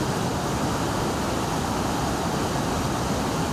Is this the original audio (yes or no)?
no